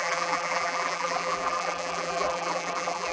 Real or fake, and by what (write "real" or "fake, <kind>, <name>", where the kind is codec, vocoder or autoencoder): fake, vocoder, BigVGAN v2